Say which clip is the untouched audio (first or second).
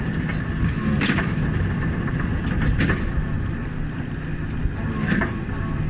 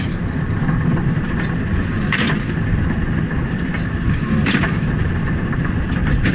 first